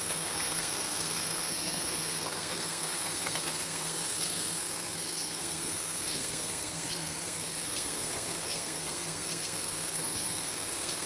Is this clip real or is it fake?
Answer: fake